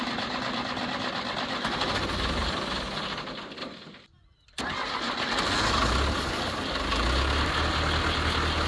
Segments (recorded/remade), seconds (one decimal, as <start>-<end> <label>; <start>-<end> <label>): 0.0-3.6 recorded; 3.6-4.6 remade; 4.6-8.7 recorded